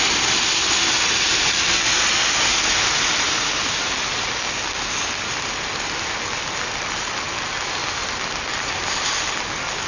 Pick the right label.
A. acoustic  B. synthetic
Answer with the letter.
A